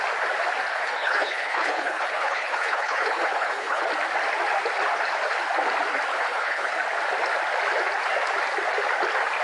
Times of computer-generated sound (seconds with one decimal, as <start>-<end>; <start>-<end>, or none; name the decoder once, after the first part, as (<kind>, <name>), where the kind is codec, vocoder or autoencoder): 0.7-3.8 (codec, HILCodec); 6.1-6.7